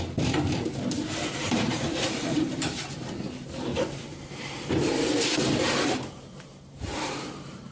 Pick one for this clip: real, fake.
fake